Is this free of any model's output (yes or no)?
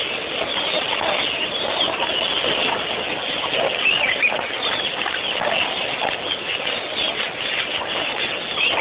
yes